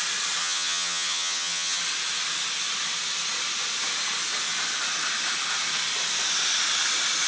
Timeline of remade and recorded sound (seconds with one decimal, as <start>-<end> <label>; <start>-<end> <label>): 0.0-0.4 recorded; 0.4-1.8 remade; 1.8-7.3 recorded